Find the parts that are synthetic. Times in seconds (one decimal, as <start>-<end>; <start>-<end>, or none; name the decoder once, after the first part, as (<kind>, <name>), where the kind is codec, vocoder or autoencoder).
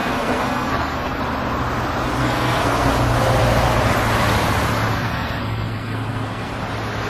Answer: 0.0-1.2 (codec, SNAC); 2.2-2.9; 4.9-6.5